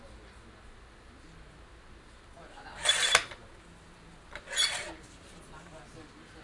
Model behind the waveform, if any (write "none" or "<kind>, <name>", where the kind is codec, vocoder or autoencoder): none